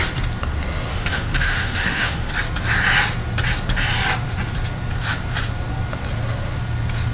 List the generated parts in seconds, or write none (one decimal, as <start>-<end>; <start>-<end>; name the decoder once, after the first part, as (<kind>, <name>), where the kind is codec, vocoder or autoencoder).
0.9-2.3 (autoencoder, DAC-VAE)